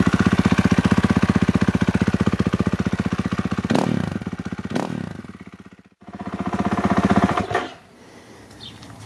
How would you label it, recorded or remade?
recorded